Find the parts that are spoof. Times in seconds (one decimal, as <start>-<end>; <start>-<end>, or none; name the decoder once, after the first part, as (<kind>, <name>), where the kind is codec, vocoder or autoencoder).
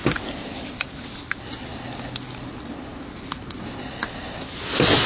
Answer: none